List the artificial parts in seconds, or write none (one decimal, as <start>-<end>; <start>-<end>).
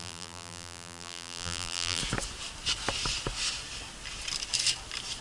0.0-2.0